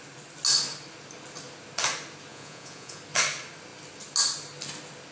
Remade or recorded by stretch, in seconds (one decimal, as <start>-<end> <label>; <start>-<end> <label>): 0.0-2.3 recorded; 2.3-3.0 remade; 3.0-5.1 recorded